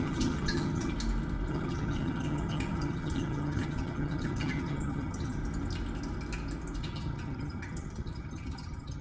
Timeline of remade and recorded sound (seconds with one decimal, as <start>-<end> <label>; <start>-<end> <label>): 0.0-0.9 remade; 0.9-1.5 recorded; 1.5-5.4 remade; 5.4-6.8 recorded; 6.8-9.0 remade